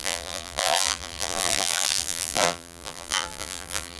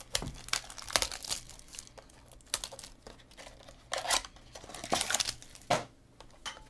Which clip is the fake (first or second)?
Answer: first